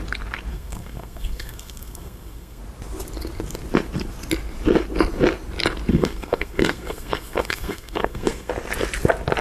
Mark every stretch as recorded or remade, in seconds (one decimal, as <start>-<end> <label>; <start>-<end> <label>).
0.0-0.5 recorded; 0.5-2.6 remade; 2.6-5.9 recorded; 5.9-8.5 remade; 8.5-9.4 recorded